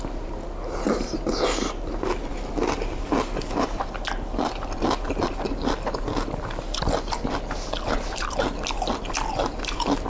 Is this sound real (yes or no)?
yes